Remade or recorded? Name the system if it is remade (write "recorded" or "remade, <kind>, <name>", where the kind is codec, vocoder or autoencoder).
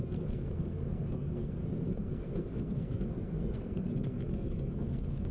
remade, codec, SNAC